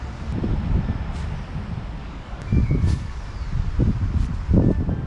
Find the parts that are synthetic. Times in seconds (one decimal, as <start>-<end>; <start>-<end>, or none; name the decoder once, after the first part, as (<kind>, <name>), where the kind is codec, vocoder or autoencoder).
2.0-3.2 (codec, DAC)

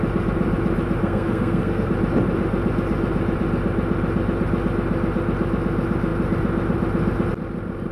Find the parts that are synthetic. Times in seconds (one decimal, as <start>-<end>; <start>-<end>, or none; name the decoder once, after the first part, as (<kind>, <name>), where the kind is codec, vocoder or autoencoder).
1.0-1.9 (codec, SNAC)

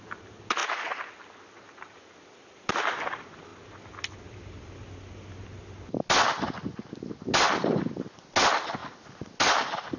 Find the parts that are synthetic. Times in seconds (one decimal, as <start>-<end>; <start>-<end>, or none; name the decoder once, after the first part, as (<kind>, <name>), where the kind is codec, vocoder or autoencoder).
none

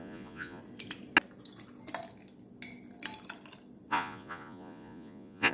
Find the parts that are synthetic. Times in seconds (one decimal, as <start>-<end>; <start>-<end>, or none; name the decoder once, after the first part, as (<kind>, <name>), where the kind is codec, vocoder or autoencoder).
0.0-0.6 (vocoder, Vocos); 3.9-5.5

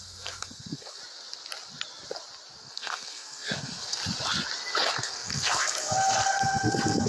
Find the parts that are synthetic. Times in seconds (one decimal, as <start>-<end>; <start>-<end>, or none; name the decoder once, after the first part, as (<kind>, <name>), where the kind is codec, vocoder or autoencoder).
0.0-1.0 (codec, SNAC); 2.6-4.0; 4.9-7.1

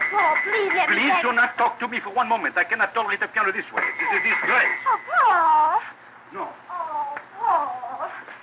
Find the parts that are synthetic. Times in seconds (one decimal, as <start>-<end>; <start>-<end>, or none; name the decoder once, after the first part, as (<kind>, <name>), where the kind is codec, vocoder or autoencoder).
none